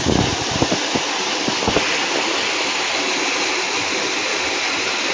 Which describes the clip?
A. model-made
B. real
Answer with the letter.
B